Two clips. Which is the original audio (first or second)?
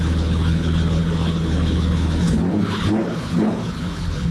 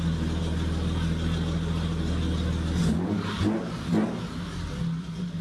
second